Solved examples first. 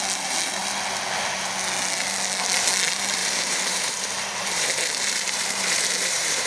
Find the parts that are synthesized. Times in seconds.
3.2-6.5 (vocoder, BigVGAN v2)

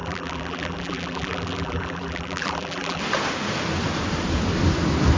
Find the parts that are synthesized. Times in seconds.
0.0-3.0 (vocoder, BigVGAN v2)

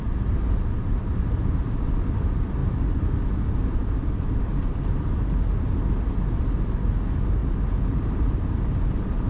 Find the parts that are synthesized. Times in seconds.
0.0-2.6 (vocoder, BigVGAN v2); 3.4-7.4; 8.3-9.3

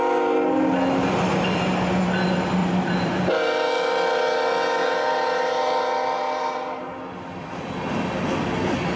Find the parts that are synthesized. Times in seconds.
2.6-6.9 (vocoder, BigVGAN v2)

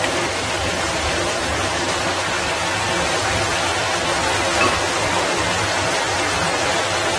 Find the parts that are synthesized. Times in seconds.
0.0-2.7 (vocoder, BigVGAN v2); 5.6-7.2